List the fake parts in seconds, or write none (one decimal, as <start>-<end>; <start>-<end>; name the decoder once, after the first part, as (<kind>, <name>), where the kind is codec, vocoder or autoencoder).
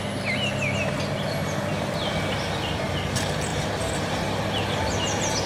3.5-4.2 (vocoder, BigVGAN v2)